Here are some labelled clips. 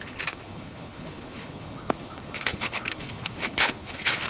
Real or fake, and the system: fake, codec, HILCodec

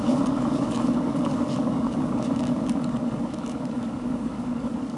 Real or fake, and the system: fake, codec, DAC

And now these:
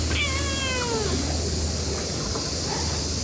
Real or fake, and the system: real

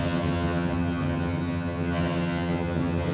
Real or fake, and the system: fake, vocoder, HiFi-GAN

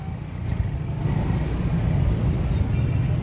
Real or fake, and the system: real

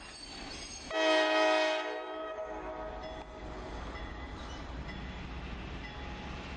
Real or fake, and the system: real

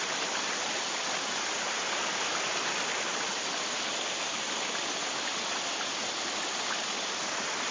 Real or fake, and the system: real